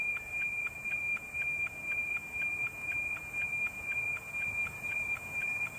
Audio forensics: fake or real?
fake